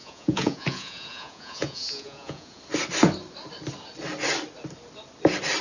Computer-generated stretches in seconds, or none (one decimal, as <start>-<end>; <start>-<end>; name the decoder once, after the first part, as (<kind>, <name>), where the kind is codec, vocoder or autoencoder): 0.0-2.6 (vocoder, Vocos)